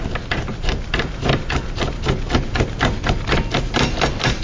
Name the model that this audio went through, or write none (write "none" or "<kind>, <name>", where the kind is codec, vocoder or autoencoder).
none